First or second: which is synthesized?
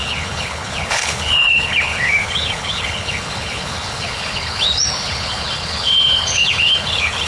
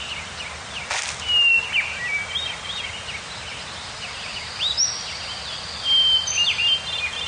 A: first